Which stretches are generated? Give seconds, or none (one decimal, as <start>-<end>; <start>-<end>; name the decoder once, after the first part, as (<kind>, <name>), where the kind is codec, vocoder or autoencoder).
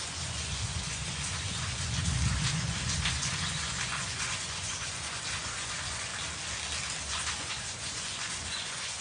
0.0-6.1 (vocoder, Vocos); 7.0-9.0